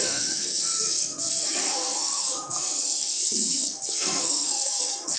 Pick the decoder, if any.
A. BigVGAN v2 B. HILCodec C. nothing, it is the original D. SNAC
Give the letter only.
D